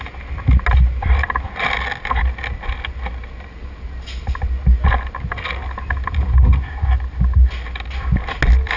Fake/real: real